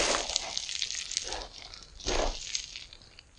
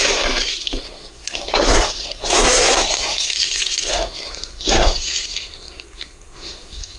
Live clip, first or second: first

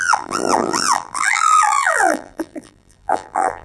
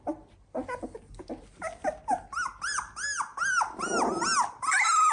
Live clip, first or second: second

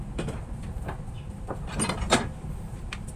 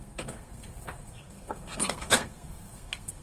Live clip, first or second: first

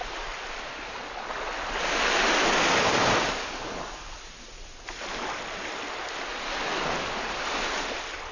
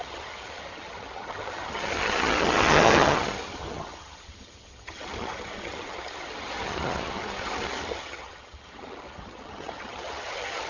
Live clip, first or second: first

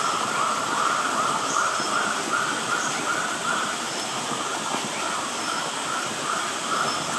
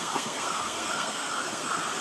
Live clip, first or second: first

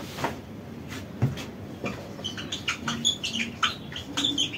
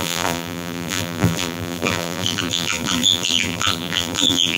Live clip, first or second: first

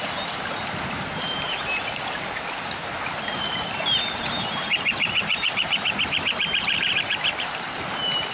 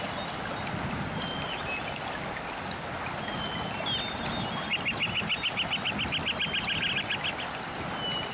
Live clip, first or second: second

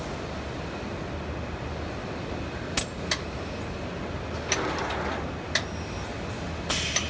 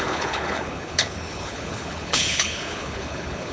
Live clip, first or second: first